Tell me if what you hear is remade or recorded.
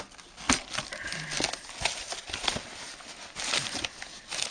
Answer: recorded